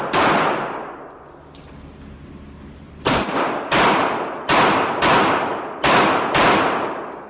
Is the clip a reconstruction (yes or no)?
no